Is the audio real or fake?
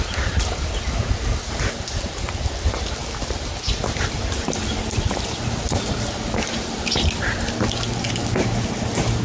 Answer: real